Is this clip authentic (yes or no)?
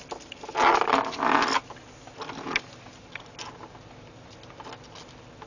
yes